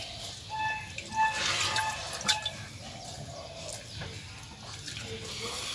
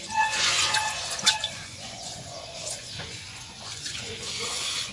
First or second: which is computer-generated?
second